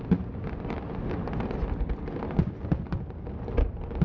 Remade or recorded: recorded